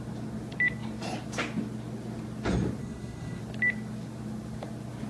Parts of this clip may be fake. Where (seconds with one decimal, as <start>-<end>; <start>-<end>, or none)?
2.8-3.4